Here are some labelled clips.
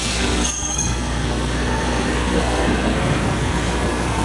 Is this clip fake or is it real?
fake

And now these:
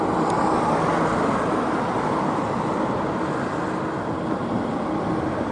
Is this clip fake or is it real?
real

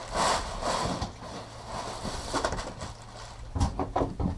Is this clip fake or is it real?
real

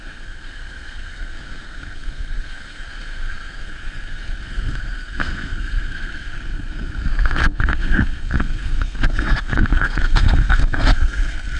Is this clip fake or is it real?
fake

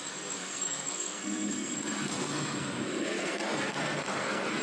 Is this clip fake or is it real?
fake